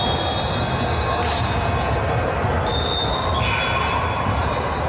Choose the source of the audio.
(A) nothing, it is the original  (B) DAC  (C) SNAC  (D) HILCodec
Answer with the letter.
A